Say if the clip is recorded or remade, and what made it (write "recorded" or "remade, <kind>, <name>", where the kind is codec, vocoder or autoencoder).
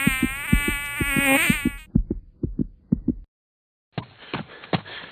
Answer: recorded